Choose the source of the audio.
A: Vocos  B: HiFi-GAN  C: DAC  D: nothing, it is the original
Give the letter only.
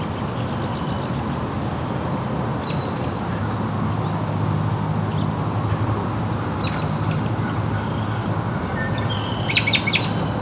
D